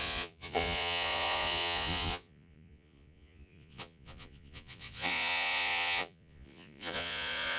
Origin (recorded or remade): remade